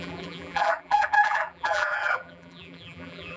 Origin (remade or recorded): remade